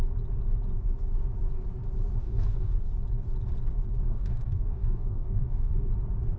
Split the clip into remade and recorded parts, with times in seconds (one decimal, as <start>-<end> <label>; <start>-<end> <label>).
0.0-2.2 recorded; 2.2-2.7 remade; 2.7-4.1 recorded; 4.1-5.9 remade; 5.9-6.4 recorded